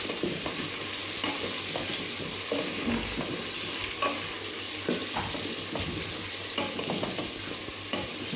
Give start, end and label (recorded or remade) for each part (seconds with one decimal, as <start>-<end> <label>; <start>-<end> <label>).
0.0-8.4 recorded